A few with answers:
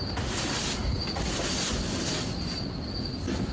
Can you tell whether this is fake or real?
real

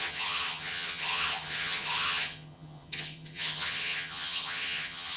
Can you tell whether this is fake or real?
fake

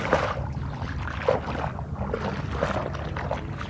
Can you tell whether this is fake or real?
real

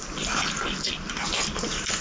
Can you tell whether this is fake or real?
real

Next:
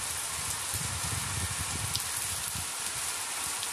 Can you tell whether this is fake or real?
real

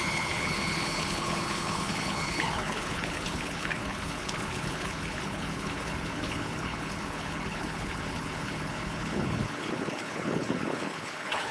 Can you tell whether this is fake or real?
fake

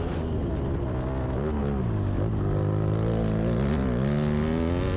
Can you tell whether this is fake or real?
real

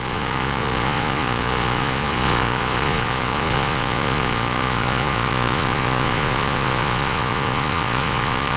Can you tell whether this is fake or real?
fake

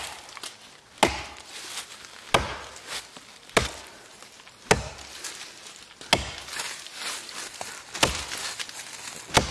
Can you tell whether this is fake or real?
real